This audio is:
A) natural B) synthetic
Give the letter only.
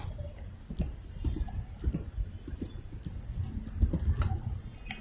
A